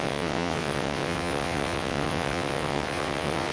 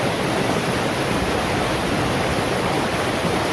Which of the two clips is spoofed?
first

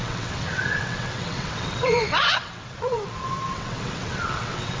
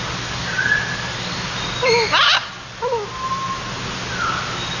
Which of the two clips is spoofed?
first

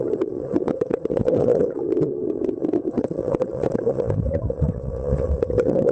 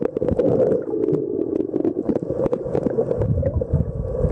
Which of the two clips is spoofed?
first